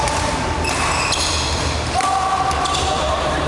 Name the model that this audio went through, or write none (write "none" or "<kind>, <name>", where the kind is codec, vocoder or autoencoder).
none